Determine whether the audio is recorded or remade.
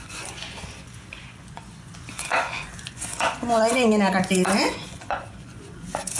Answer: remade